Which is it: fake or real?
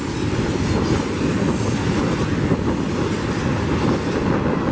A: real